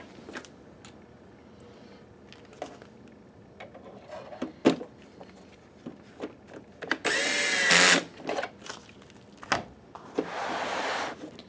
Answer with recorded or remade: recorded